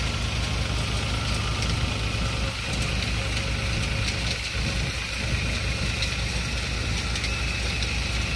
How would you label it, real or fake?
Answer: real